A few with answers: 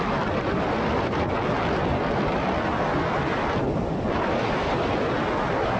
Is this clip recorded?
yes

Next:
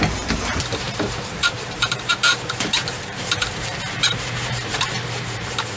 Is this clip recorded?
no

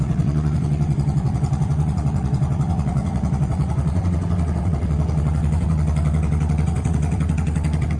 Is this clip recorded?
no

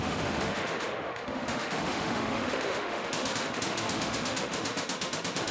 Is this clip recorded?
no